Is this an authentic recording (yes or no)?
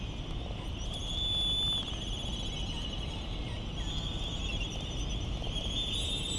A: yes